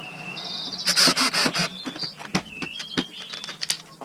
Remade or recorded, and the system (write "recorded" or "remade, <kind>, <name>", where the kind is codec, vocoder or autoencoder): recorded